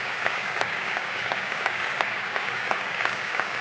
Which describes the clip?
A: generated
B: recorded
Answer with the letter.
A